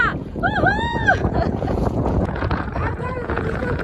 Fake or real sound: fake